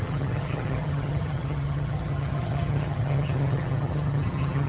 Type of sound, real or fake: fake